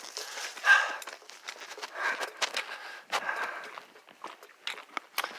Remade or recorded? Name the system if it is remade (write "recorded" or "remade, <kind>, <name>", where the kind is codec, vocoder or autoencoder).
recorded